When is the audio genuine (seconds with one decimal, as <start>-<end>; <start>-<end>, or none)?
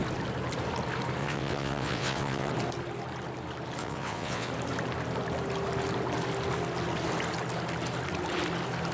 0.0-1.2; 2.5-3.8; 4.5-8.9